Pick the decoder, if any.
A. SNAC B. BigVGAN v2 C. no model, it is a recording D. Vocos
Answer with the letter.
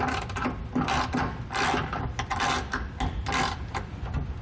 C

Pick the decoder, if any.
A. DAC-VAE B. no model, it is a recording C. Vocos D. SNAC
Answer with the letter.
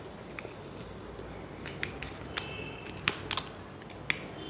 B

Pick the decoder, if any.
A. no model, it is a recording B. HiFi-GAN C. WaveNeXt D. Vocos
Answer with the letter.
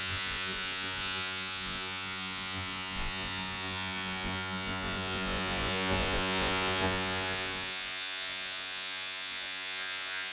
D